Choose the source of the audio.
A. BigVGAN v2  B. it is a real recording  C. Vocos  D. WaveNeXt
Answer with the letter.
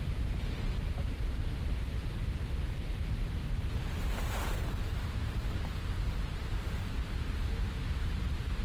A